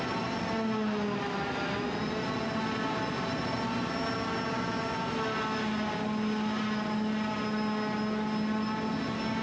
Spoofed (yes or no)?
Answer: no